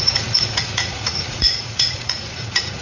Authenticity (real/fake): fake